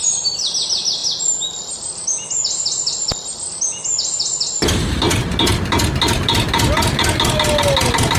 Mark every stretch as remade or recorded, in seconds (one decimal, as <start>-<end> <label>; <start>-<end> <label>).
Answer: 0.0-8.2 recorded